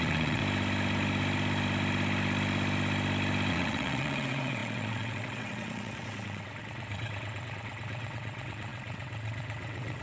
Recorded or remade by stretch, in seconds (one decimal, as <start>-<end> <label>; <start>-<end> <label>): 0.0-0.4 remade; 0.4-3.5 recorded; 3.5-10.0 remade